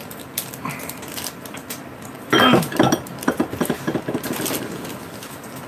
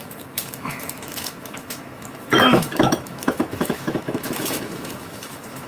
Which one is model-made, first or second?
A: second